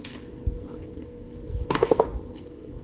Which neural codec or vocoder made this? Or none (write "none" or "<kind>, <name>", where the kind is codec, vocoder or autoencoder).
codec, SNAC